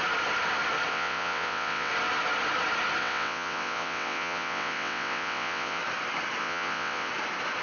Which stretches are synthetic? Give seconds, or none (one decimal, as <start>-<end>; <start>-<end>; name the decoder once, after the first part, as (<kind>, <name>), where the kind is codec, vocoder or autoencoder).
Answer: 0.9-1.9 (vocoder, WaveNeXt); 3.0-5.8; 6.4-7.1

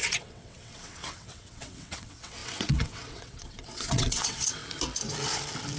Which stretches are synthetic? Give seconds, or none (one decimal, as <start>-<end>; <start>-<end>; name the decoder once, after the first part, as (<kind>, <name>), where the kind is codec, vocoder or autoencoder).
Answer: 0.0-4.6 (vocoder, WaveNeXt)

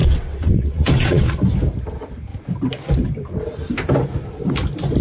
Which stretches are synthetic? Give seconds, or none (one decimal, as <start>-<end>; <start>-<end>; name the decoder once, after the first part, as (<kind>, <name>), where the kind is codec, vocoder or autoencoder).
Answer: 0.0-1.4 (vocoder, WaveNeXt)

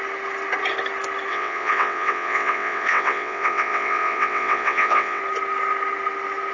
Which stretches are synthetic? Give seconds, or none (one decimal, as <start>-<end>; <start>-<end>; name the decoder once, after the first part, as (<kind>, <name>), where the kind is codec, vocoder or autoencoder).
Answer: 1.3-5.2 (vocoder, WaveNeXt)

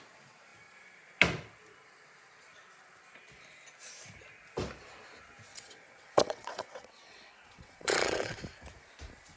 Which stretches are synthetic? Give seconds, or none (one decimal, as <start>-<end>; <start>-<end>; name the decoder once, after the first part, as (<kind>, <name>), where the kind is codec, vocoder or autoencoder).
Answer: 5.5-8.4 (vocoder, WaveNeXt)

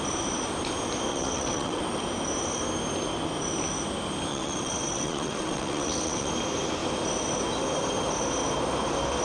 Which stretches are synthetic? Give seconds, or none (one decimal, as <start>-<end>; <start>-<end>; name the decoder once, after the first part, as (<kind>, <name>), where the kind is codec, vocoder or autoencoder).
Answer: 1.1-1.8 (vocoder, WaveNeXt); 4.3-6.3

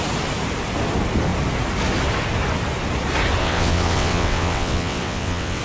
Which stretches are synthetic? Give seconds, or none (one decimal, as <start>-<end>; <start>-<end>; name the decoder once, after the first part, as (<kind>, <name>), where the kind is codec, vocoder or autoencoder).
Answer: 3.4-5.6 (vocoder, WaveNeXt)

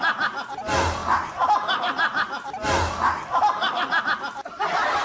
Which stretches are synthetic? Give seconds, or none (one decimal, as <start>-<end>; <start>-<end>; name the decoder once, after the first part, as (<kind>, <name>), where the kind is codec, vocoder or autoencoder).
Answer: none